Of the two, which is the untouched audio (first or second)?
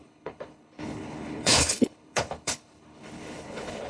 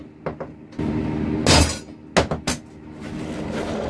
second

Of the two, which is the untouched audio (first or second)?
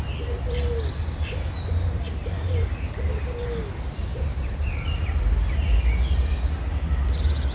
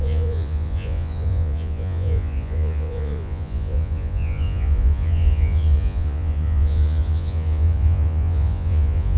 first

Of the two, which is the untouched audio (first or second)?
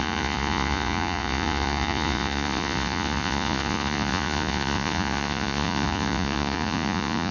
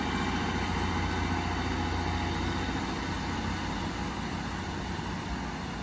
second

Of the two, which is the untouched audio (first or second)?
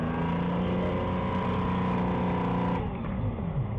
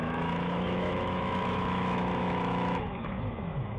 first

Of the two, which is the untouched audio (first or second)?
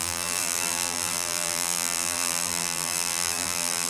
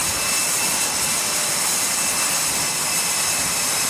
second